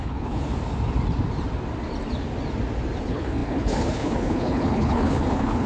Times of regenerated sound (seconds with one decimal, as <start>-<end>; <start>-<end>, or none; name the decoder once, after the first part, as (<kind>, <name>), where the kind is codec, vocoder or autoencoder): 0.0-0.5 (codec, HILCodec); 3.0-5.7